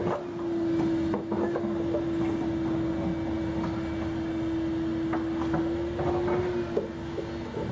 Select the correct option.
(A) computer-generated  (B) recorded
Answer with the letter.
B